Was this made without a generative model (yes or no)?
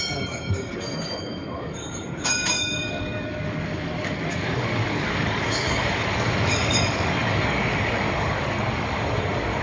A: no